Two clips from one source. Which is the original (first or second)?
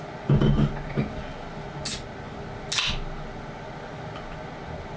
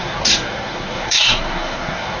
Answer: first